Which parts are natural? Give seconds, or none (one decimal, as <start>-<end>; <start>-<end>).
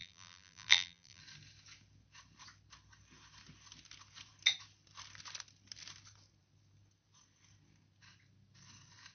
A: 1.2-9.1